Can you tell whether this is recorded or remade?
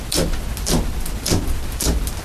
recorded